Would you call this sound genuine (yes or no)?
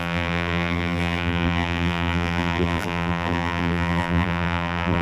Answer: no